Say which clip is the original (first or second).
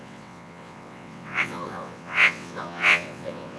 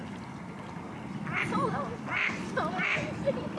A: second